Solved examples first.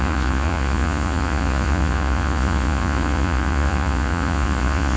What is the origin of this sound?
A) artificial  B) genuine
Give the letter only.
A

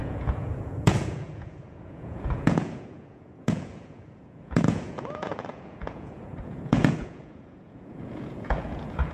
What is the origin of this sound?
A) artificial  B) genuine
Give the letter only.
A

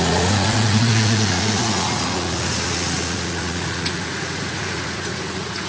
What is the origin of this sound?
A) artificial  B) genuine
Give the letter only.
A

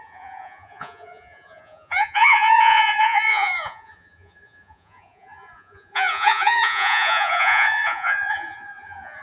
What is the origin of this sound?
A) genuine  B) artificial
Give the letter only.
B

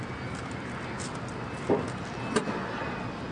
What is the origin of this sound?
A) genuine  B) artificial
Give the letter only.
A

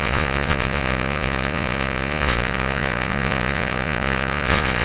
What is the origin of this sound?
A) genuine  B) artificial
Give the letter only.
B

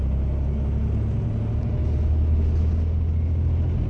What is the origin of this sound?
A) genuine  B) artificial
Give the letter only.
A